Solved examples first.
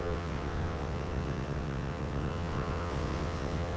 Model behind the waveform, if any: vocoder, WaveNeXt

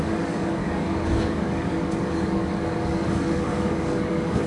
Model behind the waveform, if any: codec, DAC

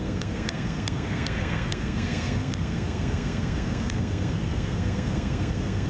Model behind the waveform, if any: codec, SNAC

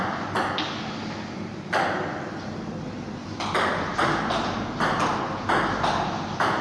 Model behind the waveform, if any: none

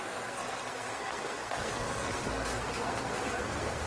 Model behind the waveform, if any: codec, SNAC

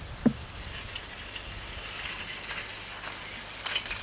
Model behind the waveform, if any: none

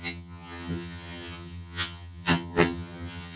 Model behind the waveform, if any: vocoder, HiFi-GAN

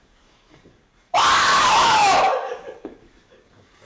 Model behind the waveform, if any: codec, DAC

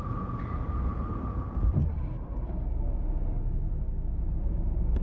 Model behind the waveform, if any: none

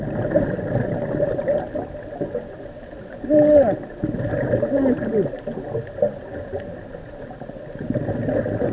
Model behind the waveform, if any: none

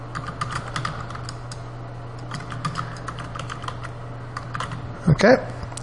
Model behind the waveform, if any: none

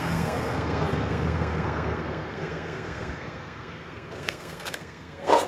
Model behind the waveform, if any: codec, SNAC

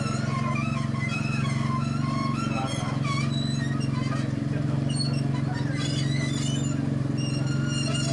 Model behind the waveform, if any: none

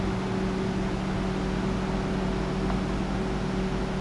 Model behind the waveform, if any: none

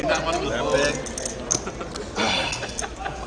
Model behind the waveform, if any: none